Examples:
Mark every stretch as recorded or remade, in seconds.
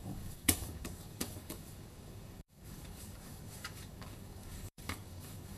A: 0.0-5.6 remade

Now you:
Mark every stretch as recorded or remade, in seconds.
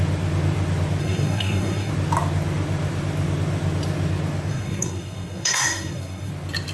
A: 0.0-1.0 recorded; 1.0-1.9 remade; 1.9-4.5 recorded; 4.5-6.3 remade; 6.3-6.7 recorded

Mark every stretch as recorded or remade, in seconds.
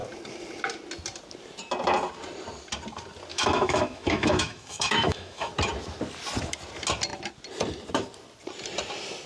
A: 0.0-3.3 recorded; 3.3-5.5 remade; 5.5-9.3 recorded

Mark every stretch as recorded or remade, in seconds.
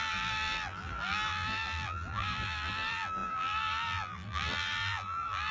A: 0.0-5.5 remade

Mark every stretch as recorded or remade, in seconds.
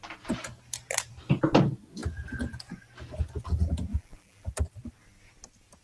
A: 0.0-3.9 recorded; 3.9-4.5 remade; 4.5-5.8 recorded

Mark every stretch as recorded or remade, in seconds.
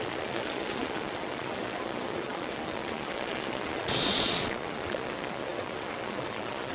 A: 0.0-6.7 remade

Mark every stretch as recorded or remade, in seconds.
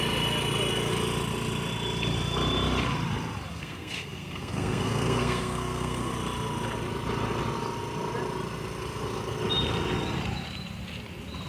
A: 0.0-3.5 recorded; 3.5-6.1 remade; 6.1-11.5 recorded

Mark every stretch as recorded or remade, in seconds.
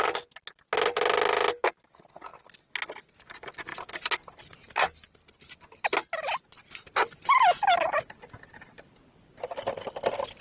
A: 0.0-10.4 recorded